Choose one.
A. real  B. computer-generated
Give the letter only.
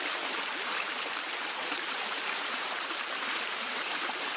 B